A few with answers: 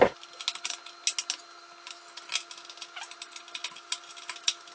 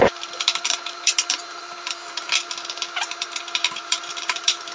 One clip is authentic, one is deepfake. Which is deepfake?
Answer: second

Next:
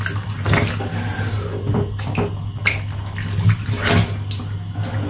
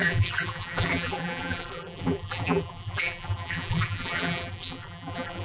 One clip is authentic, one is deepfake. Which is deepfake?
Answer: second